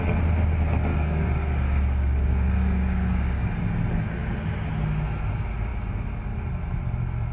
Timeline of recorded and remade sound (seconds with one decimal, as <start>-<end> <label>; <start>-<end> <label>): 0.0-0.9 recorded; 0.9-3.5 remade; 3.5-7.3 recorded